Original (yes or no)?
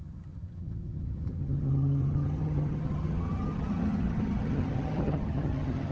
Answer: no